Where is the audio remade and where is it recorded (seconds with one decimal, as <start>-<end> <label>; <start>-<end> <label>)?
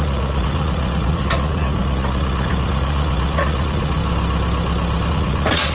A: 0.0-4.0 remade; 4.0-5.1 recorded; 5.1-5.7 remade